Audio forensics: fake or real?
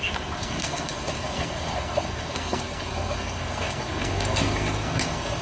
fake